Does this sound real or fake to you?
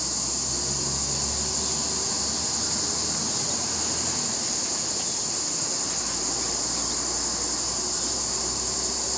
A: real